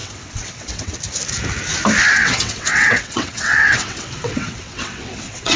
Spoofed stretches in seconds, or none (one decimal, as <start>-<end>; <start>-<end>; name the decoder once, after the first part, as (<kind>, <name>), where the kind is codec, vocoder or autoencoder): 0.0-0.9 (vocoder, WaveNeXt); 2.1-5.6